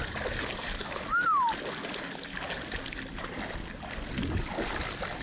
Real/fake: real